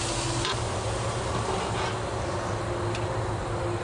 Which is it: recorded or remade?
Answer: recorded